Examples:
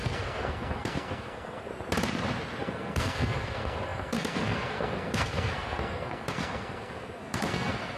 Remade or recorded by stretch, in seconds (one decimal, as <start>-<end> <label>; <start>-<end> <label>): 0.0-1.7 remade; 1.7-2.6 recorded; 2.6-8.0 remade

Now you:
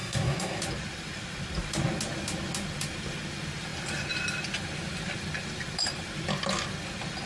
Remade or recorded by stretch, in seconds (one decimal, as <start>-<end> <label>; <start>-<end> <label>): 0.0-0.6 remade; 0.6-7.3 recorded

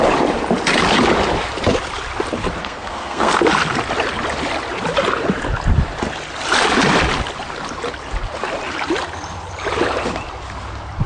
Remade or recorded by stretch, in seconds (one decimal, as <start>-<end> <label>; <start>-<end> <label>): 0.0-2.6 recorded; 2.6-3.4 remade; 3.4-11.1 recorded

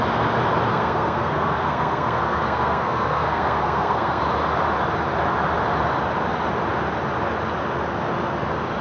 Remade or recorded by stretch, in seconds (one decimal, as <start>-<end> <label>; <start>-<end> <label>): 0.0-0.7 recorded; 0.7-4.2 remade; 4.2-8.8 recorded